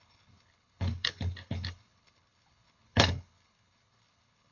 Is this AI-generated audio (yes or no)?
yes